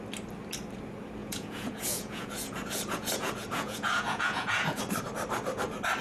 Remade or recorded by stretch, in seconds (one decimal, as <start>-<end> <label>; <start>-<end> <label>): 0.0-1.2 recorded; 1.2-4.8 remade; 4.8-6.0 recorded